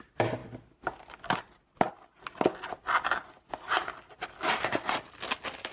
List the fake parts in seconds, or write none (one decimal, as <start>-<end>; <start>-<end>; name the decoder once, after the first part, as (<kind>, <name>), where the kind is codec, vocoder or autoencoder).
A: none